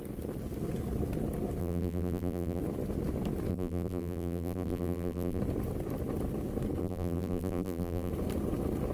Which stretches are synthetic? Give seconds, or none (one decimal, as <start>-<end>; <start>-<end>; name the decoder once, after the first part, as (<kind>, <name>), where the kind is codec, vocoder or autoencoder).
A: 1.6-2.6 (vocoder, BigVGAN v2); 3.5-5.4; 6.8-8.1